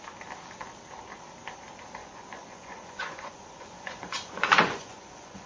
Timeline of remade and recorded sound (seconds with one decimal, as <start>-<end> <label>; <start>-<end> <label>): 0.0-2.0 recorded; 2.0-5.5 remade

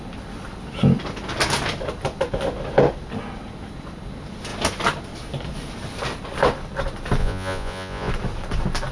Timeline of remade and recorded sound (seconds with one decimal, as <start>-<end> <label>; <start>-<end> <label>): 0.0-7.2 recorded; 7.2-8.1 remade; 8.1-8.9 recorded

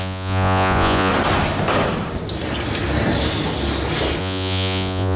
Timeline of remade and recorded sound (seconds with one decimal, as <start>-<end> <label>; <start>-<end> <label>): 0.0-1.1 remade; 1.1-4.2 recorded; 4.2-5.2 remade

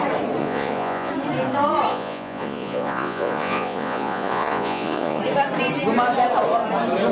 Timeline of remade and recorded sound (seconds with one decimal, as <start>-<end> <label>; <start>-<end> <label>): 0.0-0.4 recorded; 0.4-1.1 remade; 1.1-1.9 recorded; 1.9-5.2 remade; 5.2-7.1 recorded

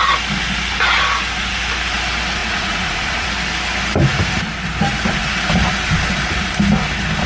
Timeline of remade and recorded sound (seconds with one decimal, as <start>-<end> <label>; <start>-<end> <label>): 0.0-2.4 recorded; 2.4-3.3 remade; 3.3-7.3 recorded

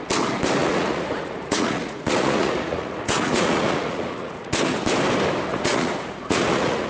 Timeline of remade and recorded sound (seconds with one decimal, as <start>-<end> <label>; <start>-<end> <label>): 0.0-0.6 recorded; 0.6-4.6 remade; 4.6-5.5 recorded; 5.5-6.9 remade

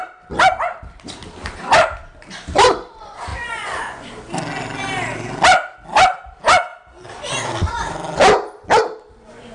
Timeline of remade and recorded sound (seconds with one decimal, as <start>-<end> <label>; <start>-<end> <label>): 0.0-3.3 recorded; 3.3-4.1 remade; 4.1-9.5 recorded

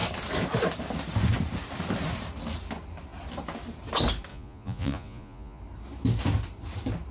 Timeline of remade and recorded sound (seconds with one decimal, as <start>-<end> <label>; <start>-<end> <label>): 0.0-4.3 recorded; 4.3-5.6 remade; 5.6-7.1 recorded